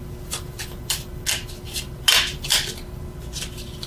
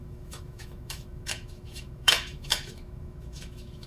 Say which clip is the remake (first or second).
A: second